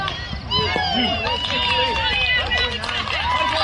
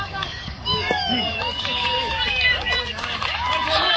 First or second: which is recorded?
first